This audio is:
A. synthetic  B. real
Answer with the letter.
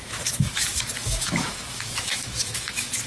A